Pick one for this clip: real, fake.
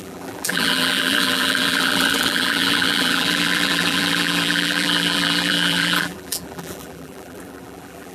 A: fake